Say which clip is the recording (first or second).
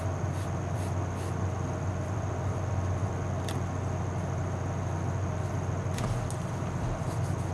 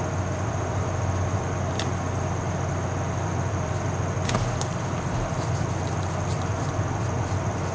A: first